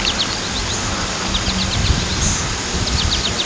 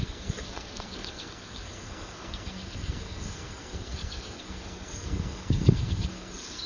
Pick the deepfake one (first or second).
second